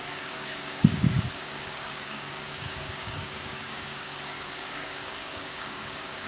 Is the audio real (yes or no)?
no